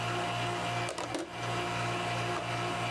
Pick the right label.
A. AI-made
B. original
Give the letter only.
B